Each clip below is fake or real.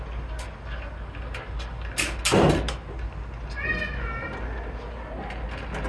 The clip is real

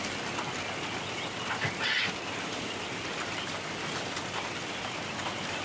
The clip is real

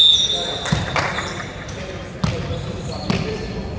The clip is real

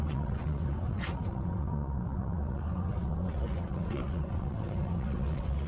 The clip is fake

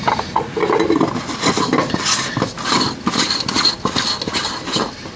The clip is real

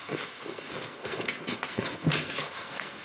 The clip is fake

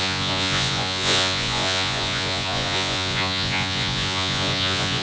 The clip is fake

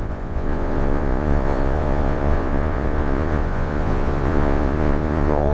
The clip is fake